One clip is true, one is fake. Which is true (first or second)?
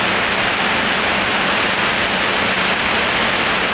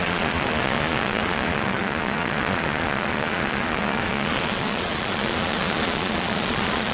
first